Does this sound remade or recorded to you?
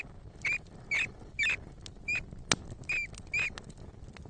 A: recorded